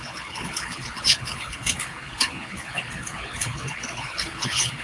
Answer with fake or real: fake